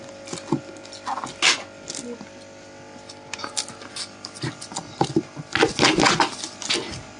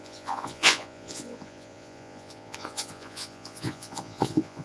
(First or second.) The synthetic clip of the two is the second